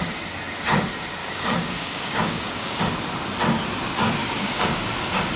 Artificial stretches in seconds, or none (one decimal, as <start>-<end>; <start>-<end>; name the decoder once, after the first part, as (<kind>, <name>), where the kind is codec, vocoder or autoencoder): 1.2-2.8 (codec, DAC); 4.2-4.9